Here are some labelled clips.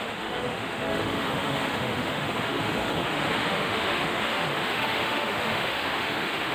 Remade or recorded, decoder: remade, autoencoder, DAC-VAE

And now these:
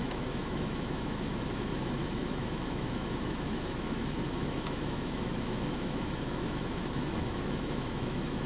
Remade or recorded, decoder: remade, autoencoder, DAC-VAE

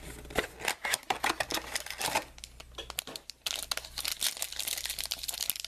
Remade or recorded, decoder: recorded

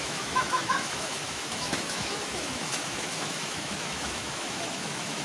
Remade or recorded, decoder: remade, autoencoder, DAC-VAE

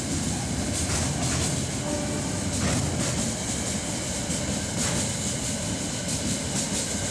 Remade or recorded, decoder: recorded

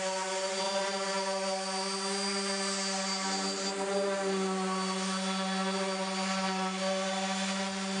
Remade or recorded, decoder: recorded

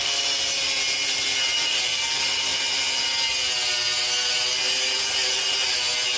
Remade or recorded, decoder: recorded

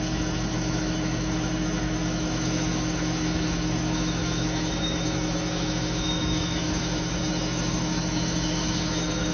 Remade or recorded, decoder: remade, autoencoder, DAC-VAE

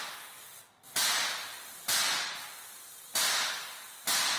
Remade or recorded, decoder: recorded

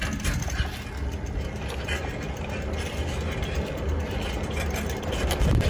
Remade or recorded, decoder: recorded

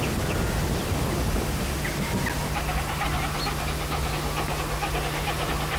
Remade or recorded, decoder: recorded